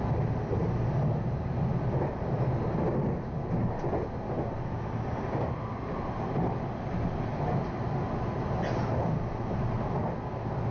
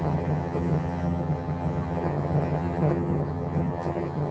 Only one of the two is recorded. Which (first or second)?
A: first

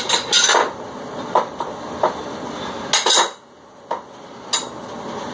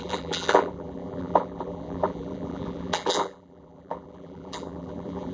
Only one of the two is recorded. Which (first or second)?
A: first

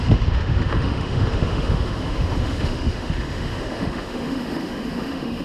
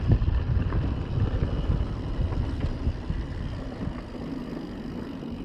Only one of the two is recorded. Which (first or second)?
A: second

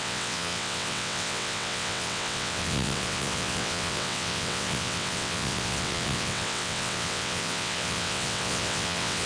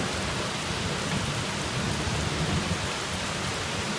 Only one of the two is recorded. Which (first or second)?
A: second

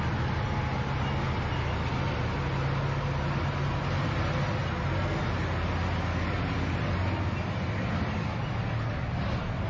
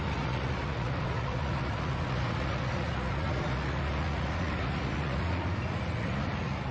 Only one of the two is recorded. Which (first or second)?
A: first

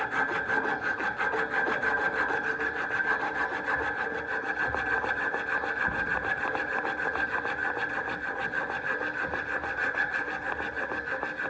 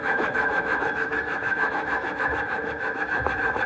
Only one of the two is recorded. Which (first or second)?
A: first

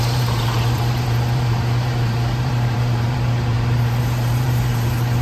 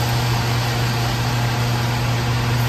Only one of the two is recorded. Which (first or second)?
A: second